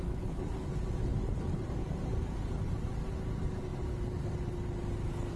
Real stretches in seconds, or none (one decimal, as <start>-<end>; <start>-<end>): 0.0-5.4